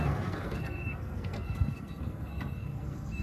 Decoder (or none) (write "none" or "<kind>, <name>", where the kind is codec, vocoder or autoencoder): codec, SNAC